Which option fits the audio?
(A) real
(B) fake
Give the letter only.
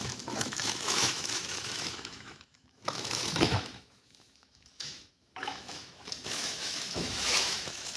B